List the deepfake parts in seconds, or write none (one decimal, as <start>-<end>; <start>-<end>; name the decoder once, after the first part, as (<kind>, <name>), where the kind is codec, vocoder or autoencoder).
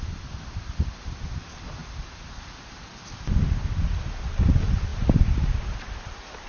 1.8-2.4 (vocoder, BigVGAN v2); 4.9-5.5